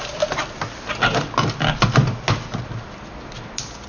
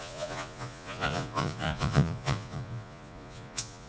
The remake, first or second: second